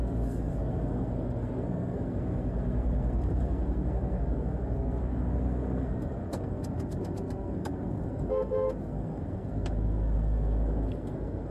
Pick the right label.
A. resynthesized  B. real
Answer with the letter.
A